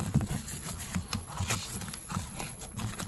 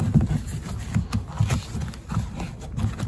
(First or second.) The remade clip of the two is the first